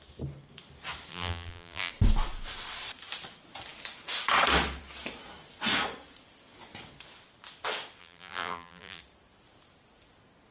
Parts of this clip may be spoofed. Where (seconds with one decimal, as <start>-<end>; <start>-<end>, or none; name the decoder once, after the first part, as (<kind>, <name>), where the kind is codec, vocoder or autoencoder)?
1.1-1.9 (vocoder, BigVGAN v2); 8.0-9.0

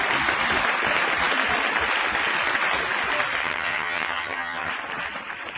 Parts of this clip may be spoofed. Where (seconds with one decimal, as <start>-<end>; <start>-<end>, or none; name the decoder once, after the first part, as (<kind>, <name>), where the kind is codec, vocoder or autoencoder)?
3.4-4.7 (vocoder, HiFi-GAN)

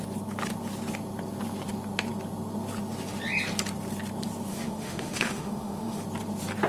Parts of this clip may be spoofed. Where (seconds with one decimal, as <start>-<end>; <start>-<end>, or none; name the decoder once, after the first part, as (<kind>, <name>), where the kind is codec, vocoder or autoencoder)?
4.5-6.0 (autoencoder, DAC-VAE)

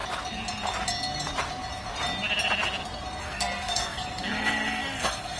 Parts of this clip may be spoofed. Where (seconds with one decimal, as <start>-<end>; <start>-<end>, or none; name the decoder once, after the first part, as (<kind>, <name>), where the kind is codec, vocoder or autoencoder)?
3.2-5.4 (codec, SNAC)

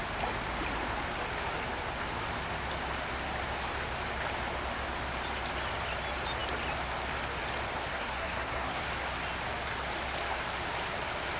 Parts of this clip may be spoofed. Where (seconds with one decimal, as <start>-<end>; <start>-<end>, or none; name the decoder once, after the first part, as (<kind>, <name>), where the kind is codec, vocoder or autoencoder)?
7.9-8.8 (codec, SNAC)

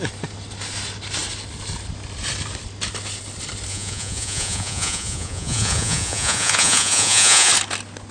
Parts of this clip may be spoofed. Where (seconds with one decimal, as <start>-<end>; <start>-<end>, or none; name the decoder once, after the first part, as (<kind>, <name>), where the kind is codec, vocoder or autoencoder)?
3.7-7.5 (vocoder, Vocos)